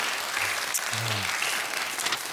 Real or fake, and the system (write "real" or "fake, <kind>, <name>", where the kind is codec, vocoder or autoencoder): real